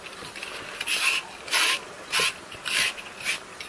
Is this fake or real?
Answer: real